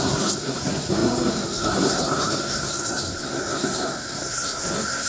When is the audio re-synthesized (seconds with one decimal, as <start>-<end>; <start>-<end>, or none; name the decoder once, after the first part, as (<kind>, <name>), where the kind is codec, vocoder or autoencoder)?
0.0-5.1 (codec, SNAC)